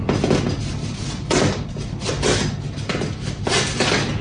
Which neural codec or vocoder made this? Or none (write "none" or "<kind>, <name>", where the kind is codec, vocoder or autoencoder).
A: none